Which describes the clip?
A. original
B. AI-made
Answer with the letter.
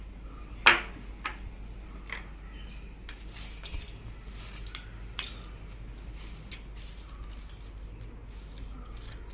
A